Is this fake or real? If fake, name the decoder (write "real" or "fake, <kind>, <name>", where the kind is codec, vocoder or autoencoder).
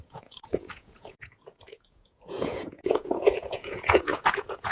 fake, vocoder, Vocos